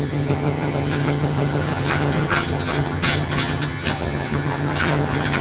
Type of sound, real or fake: fake